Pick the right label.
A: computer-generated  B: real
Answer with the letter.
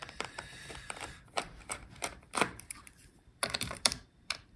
A